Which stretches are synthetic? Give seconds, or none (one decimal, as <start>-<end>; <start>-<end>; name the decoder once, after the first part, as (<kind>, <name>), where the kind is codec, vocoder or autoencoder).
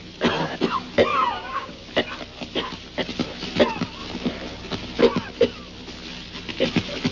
1.1-1.9 (codec, DAC)